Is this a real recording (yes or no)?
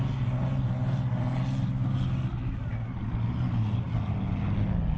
yes